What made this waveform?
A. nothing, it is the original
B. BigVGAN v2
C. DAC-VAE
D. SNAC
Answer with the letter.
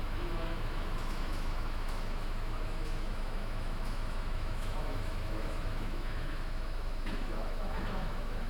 C